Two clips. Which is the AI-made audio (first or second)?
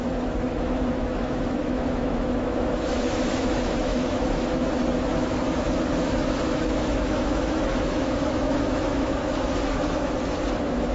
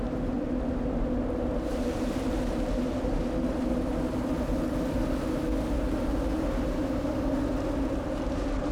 first